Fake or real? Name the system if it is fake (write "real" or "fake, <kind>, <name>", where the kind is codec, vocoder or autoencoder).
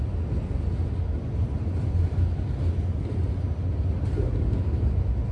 real